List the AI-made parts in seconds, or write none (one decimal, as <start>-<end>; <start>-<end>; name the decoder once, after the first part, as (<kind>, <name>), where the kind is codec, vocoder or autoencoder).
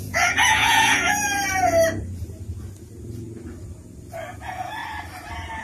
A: 0.0-1.4 (vocoder, Vocos); 4.3-4.8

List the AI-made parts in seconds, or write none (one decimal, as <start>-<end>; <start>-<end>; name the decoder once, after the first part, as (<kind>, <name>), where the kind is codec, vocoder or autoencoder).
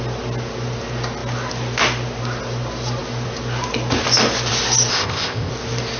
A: 4.9-5.5 (codec, ZipCodec)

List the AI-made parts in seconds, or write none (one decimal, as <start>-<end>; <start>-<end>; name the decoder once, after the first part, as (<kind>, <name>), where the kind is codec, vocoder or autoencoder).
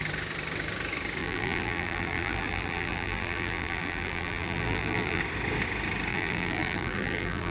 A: 1.2-5.2 (vocoder, BigVGAN v2); 6.1-7.5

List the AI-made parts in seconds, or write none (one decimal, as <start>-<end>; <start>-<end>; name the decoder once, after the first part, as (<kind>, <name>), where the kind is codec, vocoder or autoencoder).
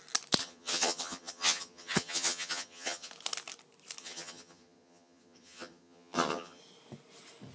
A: 0.4-3.1 (vocoder, HiFi-GAN); 4.0-6.6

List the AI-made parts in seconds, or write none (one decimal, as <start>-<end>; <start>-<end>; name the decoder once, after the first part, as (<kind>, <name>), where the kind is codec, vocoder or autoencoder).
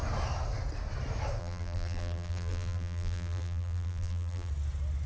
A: 1.4-4.5 (vocoder, BigVGAN v2)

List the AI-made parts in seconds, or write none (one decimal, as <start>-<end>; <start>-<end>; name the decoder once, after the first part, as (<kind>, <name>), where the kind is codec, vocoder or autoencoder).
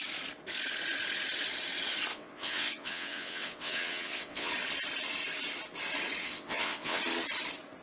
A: 2.1-4.5 (vocoder, WaveNeXt); 6.2-7.0